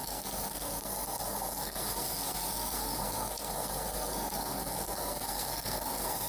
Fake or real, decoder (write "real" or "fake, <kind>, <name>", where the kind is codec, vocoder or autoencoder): fake, codec, SNAC